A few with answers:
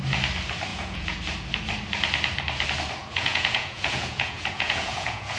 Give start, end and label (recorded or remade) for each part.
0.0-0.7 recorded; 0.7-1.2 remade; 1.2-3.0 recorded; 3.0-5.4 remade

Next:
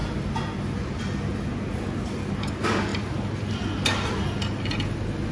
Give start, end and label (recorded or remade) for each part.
0.0-5.3 recorded

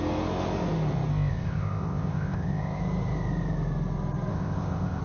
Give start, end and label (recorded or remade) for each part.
0.0-1.1 recorded; 1.1-2.8 remade; 2.8-4.3 recorded; 4.3-5.0 remade